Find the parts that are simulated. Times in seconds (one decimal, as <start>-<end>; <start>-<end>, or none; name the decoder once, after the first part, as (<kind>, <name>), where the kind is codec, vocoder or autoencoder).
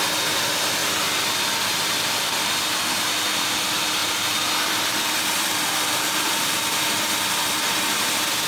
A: none